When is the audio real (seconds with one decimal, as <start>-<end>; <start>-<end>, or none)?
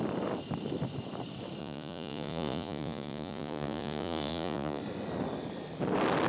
0.0-1.6; 4.8-6.3